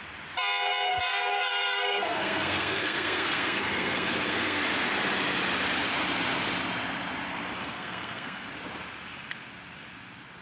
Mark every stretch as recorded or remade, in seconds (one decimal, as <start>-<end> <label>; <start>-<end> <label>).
0.0-0.9 recorded; 0.9-4.6 remade; 4.6-7.6 recorded; 7.6-8.5 remade; 8.5-10.4 recorded